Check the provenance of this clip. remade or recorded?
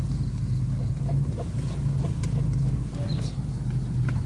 recorded